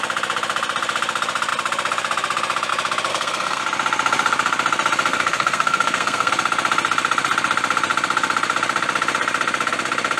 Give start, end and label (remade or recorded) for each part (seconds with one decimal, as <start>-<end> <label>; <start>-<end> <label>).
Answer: 0.0-3.1 recorded; 3.1-3.6 remade; 3.6-5.1 recorded; 5.1-6.3 remade; 6.3-10.2 recorded